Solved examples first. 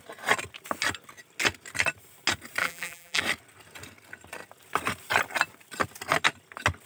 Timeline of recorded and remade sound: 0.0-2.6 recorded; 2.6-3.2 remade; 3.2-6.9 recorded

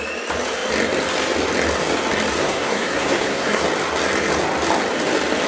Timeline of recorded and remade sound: 0.0-2.4 recorded; 2.4-3.6 remade; 3.6-5.5 recorded

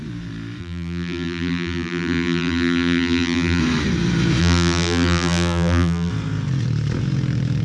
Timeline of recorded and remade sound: 0.0-0.6 recorded; 0.6-3.6 remade; 3.6-4.4 recorded; 4.4-6.1 remade; 6.1-7.6 recorded

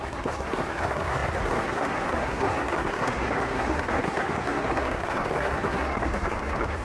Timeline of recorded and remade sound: 0.0-6.8 remade

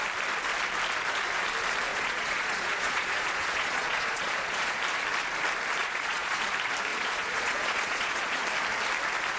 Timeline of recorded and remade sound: 0.0-1.9 recorded; 1.9-4.8 remade; 4.8-5.8 recorded; 5.8-6.5 remade; 6.5-6.9 recorded; 6.9-8.4 remade; 8.4-9.4 recorded

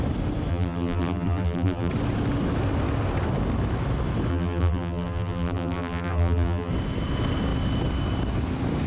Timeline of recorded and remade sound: 0.0-0.5 recorded; 0.5-1.9 remade; 1.9-4.3 recorded; 4.3-6.7 remade; 6.7-8.9 recorded